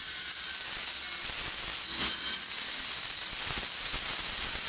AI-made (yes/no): no